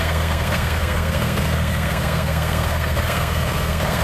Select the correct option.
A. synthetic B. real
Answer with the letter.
A